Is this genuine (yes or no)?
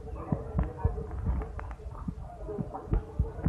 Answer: yes